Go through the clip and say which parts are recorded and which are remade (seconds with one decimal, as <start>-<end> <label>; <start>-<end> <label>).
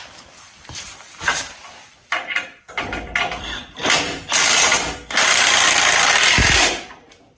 0.0-3.8 remade; 3.8-6.4 recorded; 6.4-7.4 remade